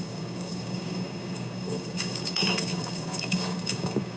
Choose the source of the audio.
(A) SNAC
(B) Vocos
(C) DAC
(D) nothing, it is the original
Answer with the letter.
C